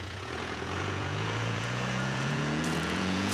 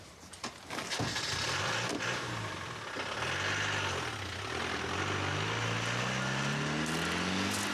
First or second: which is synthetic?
first